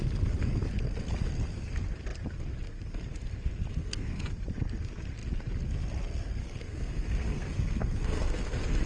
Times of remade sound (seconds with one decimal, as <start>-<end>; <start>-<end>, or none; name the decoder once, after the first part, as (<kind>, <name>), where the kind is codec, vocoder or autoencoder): 3.7-4.3 (codec, SNAC); 6.4-8.9